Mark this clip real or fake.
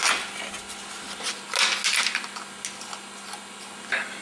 real